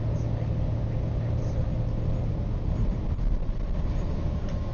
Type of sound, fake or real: real